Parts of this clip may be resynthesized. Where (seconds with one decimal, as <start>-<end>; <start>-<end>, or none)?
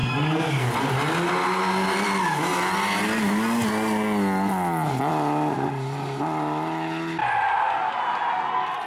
0.0-0.7